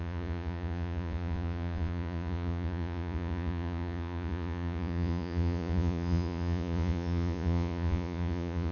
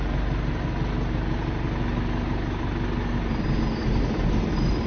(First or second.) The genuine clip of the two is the second